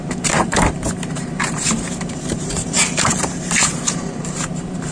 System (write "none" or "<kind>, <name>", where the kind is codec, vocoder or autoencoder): vocoder, BigVGAN v2